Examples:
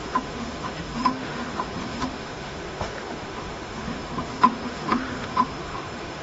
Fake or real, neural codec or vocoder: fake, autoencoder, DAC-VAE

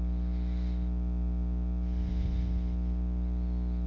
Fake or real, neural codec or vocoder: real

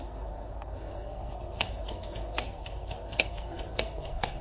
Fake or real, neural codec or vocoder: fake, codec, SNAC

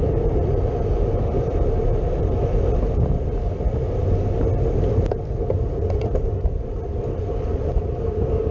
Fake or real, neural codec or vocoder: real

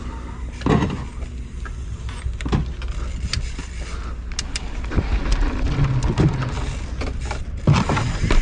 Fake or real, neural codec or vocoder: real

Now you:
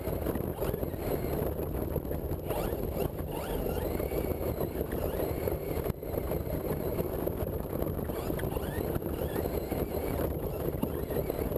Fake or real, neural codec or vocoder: real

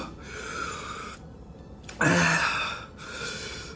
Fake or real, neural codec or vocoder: fake, vocoder, BigVGAN v2